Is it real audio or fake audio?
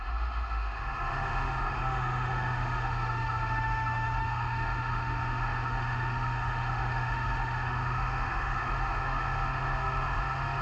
fake